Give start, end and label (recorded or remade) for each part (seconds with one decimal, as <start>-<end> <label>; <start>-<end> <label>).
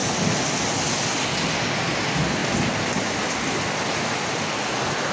0.0-5.1 recorded